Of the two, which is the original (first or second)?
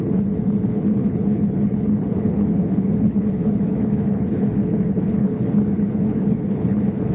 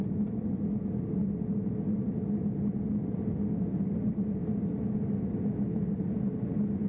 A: second